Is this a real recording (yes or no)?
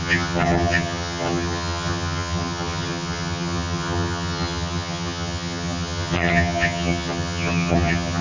no